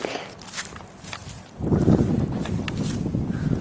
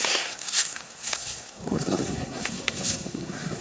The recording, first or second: first